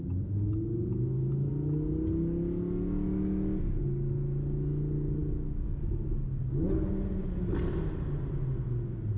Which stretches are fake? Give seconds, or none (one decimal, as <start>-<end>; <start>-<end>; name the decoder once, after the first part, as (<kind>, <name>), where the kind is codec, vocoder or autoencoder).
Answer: none